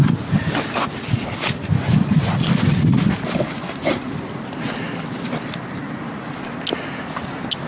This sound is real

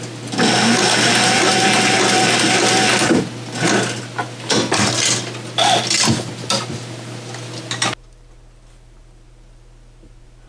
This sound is real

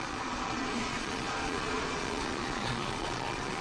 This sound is fake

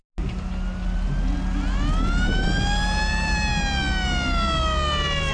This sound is real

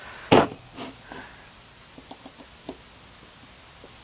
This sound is real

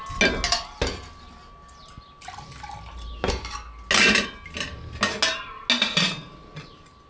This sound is real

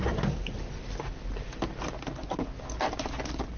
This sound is real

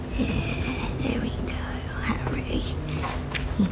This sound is real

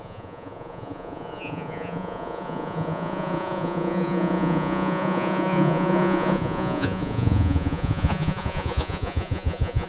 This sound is fake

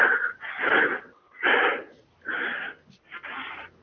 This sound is real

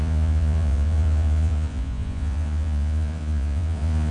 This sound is fake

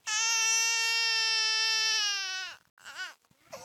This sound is real